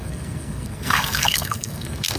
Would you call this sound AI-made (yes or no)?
yes